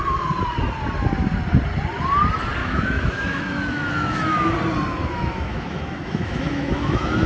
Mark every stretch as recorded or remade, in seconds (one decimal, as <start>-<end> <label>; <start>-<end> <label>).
0.0-2.6 recorded; 2.6-4.5 remade; 4.5-5.0 recorded; 5.0-7.3 remade